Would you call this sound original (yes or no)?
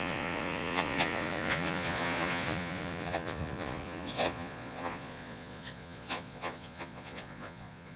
no